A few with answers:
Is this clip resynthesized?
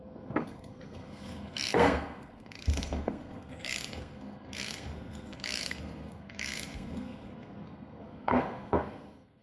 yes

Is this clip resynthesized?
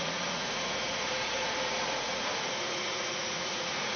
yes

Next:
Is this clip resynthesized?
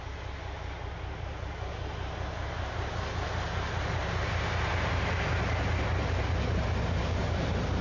no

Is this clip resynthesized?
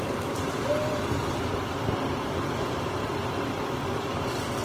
no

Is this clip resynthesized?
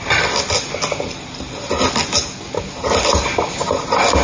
no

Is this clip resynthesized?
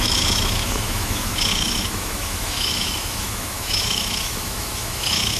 yes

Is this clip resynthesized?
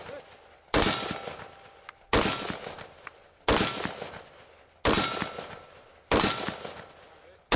no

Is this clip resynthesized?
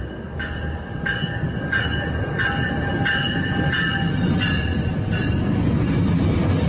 no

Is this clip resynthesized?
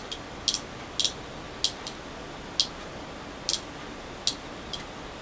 no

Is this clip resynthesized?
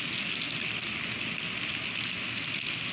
no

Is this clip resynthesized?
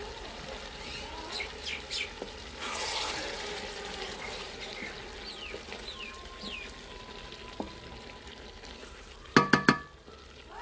no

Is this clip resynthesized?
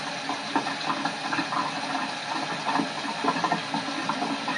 no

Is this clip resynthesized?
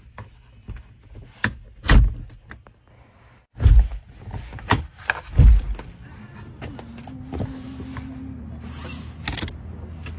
no